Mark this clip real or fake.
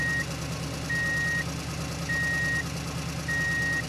real